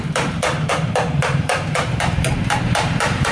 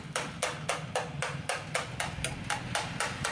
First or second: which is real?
second